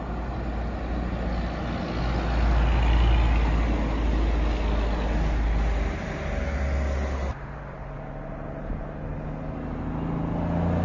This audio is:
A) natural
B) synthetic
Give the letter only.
A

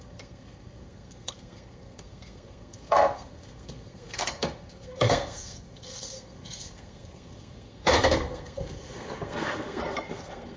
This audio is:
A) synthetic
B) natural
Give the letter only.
A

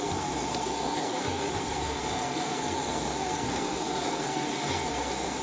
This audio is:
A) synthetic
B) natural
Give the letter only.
A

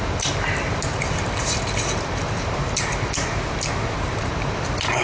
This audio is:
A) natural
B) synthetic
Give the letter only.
A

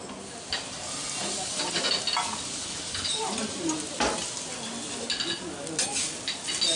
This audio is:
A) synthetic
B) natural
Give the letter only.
B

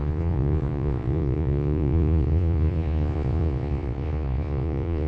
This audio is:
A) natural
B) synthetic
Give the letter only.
B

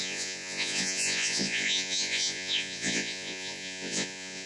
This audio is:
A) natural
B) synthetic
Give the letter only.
B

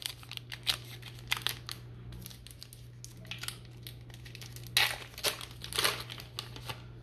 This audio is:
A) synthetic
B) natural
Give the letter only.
B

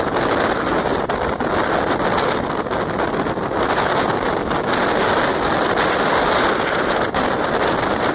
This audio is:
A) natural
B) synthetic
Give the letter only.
A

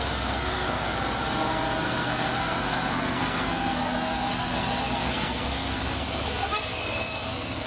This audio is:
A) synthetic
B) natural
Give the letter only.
A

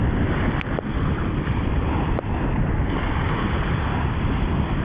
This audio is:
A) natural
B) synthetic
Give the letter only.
A